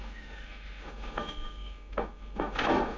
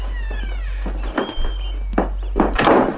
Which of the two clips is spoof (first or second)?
first